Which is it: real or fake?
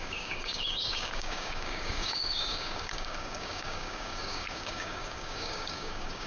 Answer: fake